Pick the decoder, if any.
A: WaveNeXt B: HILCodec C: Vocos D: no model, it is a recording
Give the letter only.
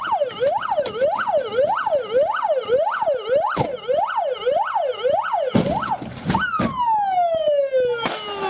D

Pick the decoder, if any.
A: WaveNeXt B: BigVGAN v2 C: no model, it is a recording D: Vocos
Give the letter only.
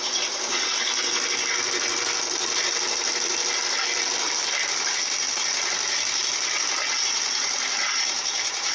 C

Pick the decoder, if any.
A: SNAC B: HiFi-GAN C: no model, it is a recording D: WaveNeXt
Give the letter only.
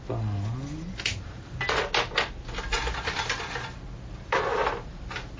C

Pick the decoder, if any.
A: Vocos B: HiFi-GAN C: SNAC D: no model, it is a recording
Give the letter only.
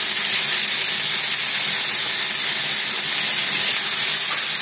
D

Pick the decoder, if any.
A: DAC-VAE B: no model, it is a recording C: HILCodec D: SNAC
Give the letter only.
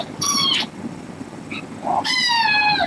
B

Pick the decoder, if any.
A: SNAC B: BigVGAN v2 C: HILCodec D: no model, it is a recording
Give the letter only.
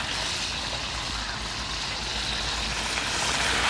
D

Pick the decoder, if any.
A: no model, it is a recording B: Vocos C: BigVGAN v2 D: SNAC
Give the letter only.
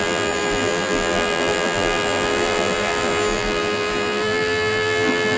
C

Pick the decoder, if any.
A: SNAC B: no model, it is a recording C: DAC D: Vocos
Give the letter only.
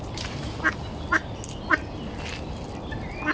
B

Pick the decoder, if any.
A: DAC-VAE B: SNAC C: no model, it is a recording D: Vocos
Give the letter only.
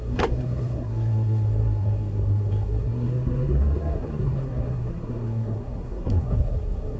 B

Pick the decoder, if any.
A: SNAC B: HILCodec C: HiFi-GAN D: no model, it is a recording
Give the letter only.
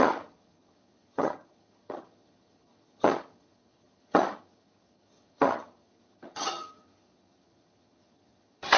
C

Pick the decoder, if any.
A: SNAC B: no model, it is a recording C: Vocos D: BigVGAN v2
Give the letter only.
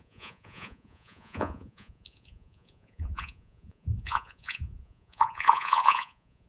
C